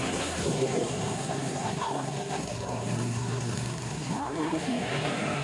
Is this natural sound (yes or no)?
no